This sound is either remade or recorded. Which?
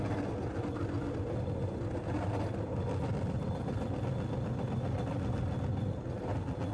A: recorded